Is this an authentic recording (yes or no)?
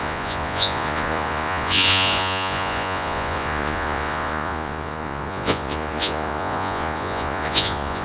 no